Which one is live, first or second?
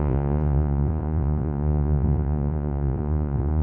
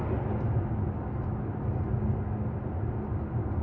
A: second